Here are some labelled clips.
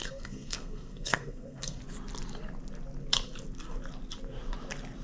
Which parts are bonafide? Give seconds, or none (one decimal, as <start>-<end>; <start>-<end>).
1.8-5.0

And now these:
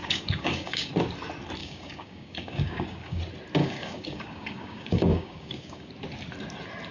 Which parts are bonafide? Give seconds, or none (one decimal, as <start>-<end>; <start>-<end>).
0.9-1.6; 3.2-3.6; 5.9-6.9

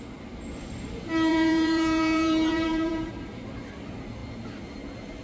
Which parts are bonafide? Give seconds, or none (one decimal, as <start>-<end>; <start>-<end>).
0.0-1.3; 3.1-5.2

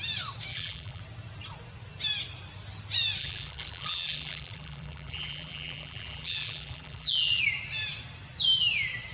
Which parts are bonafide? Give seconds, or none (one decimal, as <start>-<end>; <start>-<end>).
0.0-0.5; 1.0-3.2; 7.4-9.1

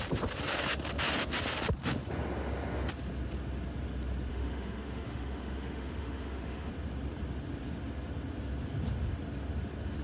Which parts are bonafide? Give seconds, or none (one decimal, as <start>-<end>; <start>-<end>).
0.0-4.3; 6.7-10.0

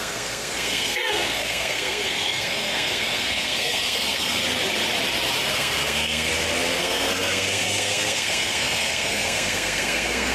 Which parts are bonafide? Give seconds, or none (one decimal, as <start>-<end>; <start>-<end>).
4.4-5.5; 6.3-6.8

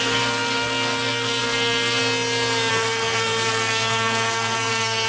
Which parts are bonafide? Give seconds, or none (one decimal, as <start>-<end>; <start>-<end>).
2.0-2.7

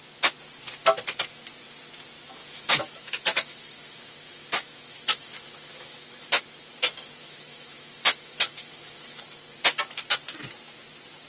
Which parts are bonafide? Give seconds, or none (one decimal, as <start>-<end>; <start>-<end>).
0.0-2.4; 6.4-7.2; 9.2-11.3